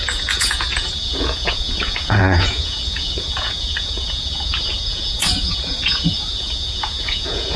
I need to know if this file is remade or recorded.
remade